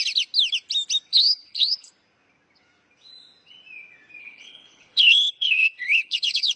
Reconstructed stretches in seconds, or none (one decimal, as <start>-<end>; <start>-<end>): 1.1-1.9; 4.2-6.6

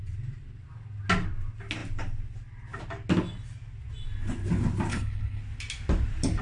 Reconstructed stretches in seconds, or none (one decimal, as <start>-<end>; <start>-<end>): 4.9-5.4

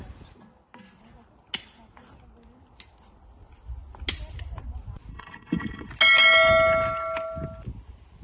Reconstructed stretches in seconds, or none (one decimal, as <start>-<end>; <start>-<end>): 5.1-5.9

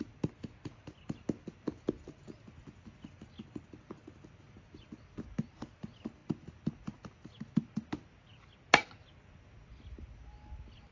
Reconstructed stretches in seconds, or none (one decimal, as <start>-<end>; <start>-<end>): none

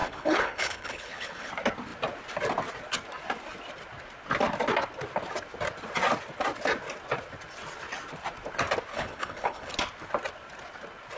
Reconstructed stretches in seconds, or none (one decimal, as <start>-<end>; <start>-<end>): 0.0-1.5; 8.9-9.7

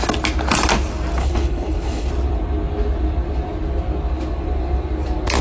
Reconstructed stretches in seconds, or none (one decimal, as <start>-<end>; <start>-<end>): 1.2-2.1

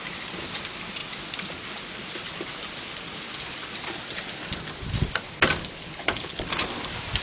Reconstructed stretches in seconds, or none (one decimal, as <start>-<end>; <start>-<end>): 5.8-6.4